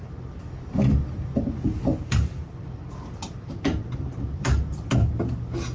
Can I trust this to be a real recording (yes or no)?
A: yes